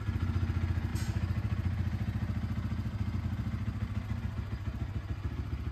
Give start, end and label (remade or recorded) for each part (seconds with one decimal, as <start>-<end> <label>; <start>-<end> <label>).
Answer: 0.0-5.7 recorded